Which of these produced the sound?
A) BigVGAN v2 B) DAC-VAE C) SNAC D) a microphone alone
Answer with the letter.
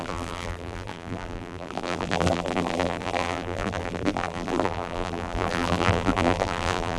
A